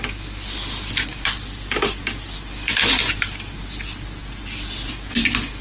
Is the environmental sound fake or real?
real